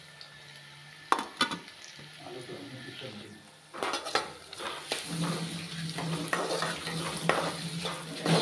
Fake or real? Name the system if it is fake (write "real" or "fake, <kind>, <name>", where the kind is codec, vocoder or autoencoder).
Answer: real